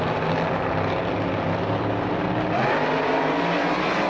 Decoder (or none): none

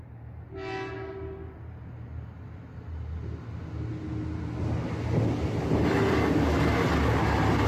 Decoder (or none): none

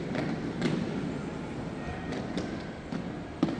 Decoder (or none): none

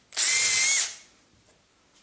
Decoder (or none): none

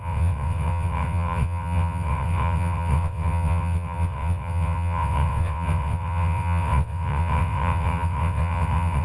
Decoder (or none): vocoder, WaveNeXt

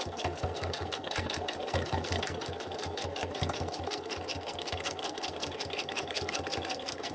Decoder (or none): codec, SNAC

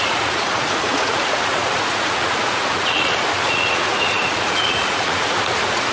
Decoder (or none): vocoder, Vocos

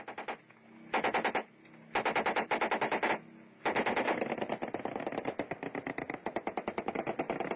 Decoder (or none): none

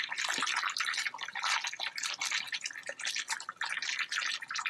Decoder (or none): none